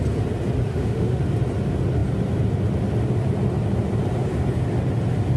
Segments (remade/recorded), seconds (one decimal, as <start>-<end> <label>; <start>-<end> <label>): 0.0-0.7 recorded; 0.7-1.2 remade; 1.2-5.4 recorded